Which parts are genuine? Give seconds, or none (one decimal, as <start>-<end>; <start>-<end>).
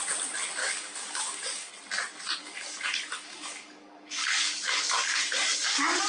0.0-0.6; 1.7-2.4